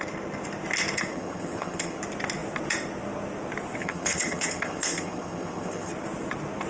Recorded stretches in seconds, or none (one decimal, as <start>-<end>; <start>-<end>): 0.0-1.1; 2.0-3.8; 5.9-6.7